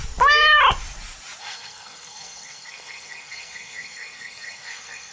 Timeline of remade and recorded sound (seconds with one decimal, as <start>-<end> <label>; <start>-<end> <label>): 0.0-1.4 recorded; 1.4-5.1 remade